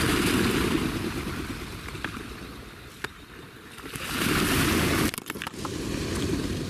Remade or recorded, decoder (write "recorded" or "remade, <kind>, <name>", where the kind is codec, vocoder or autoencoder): recorded